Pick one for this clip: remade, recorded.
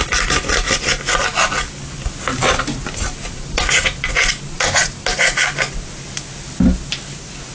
recorded